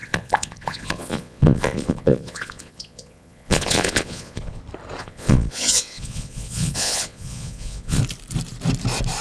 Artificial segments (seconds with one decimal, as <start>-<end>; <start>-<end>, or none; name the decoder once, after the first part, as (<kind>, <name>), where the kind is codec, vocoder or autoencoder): 0.0-4.6 (vocoder, Vocos); 5.0-8.0